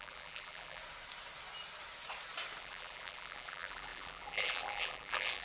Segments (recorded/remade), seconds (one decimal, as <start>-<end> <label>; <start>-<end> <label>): 0.0-0.8 remade; 0.8-2.6 recorded; 2.6-5.4 remade

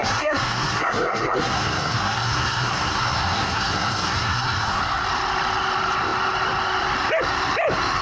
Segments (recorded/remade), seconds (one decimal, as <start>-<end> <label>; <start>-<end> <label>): 0.0-4.8 remade; 4.8-8.0 recorded